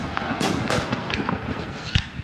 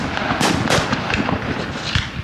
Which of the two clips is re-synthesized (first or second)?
first